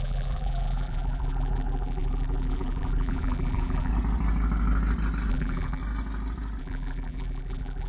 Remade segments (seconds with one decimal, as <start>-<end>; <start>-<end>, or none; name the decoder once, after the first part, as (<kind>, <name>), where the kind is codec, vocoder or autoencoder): 0.0-3.9 (vocoder, BigVGAN v2); 5.3-5.8; 6.6-7.9